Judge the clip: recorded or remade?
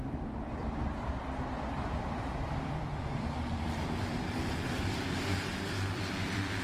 remade